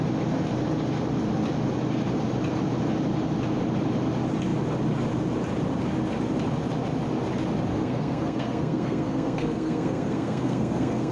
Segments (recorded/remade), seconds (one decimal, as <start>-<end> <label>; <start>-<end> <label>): 0.0-7.7 recorded; 7.7-11.1 remade